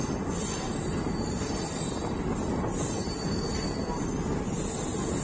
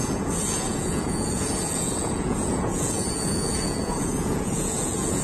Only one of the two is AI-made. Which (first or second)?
second